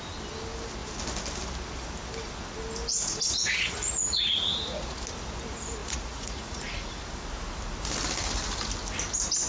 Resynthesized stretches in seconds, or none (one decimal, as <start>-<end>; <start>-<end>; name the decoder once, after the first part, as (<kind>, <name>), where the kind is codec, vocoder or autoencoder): 2.9-5.0 (vocoder, Vocos); 5.8-7.0